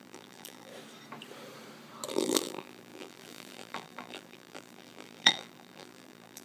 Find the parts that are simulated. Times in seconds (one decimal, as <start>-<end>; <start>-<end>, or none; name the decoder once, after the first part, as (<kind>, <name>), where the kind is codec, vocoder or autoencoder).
0.0-0.7 (vocoder, BigVGAN v2); 2.1-6.4

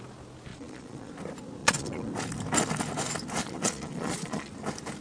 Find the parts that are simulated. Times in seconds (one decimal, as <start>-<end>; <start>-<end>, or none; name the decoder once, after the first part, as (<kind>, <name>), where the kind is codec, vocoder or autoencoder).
0.5-1.1 (vocoder, Vocos); 1.6-2.1; 3.4-4.5

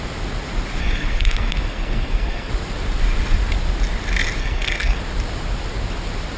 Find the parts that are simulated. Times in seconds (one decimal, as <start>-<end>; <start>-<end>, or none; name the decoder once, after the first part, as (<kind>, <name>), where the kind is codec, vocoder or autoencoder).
0.8-2.5 (codec, SNAC); 4.4-5.0